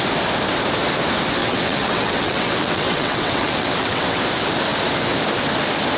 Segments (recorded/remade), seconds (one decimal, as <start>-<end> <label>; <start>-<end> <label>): 0.0-1.4 recorded; 1.4-4.2 remade; 4.2-6.0 recorded

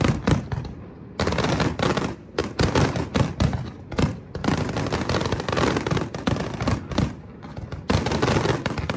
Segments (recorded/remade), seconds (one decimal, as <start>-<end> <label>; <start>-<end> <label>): 0.0-9.0 recorded